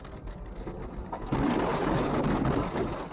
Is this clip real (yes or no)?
yes